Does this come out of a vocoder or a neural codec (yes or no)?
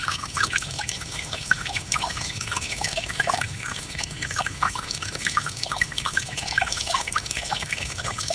yes